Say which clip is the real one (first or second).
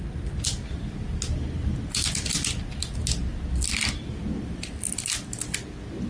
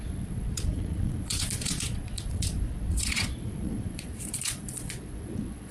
first